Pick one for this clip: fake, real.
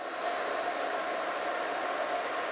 real